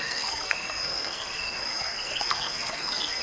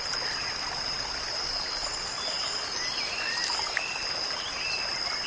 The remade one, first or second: first